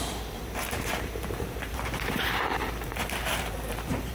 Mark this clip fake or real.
fake